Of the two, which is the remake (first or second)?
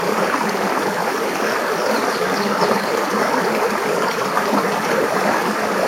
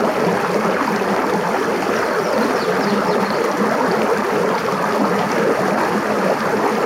first